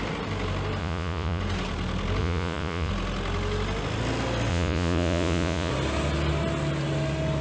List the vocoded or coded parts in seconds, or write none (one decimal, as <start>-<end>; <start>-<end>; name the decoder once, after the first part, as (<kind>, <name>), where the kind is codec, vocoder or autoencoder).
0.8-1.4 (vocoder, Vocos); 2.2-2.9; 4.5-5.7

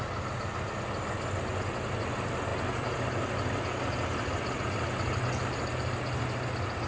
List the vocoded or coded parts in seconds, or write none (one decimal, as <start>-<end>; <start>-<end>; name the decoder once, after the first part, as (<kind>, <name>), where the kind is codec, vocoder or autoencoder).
none

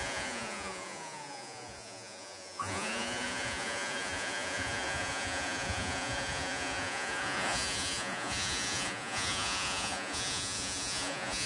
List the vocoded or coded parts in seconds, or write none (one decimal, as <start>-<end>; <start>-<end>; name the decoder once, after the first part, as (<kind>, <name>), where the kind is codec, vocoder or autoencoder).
0.0-11.5 (vocoder, Vocos)